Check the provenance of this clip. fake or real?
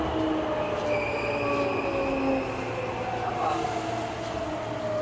real